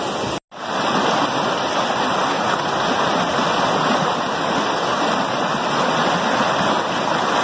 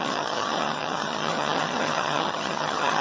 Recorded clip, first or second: first